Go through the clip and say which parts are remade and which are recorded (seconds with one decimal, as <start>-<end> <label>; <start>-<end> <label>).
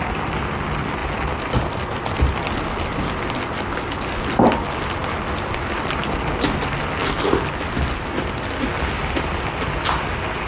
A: 0.0-10.5 recorded